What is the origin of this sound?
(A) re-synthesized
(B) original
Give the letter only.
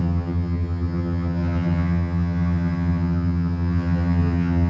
A